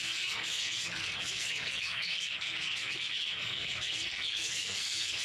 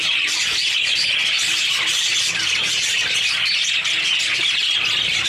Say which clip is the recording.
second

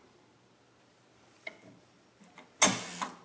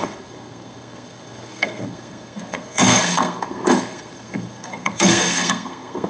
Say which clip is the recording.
first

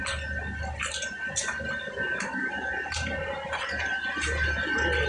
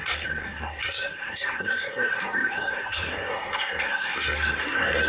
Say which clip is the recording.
first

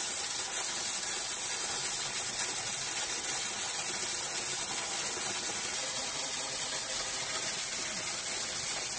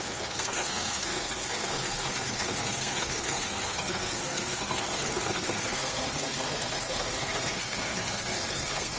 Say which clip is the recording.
first